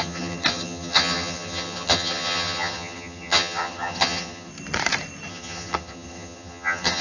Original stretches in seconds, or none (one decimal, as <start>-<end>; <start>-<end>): 4.5-5.3